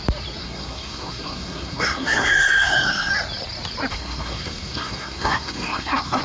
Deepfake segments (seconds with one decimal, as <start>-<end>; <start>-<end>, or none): 0.4-3.1; 3.9-6.2